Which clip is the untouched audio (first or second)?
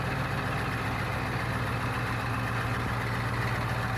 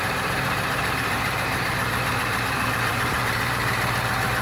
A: first